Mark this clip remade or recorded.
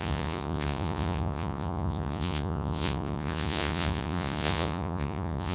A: remade